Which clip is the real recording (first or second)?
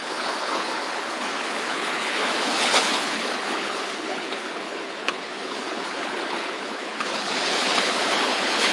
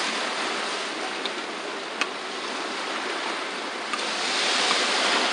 second